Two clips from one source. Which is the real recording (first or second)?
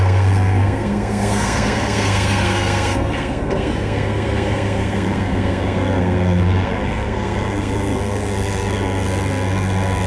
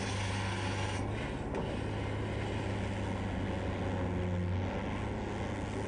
second